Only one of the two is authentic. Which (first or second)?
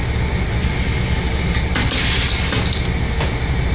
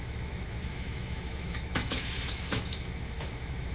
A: first